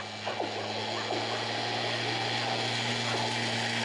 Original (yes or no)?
yes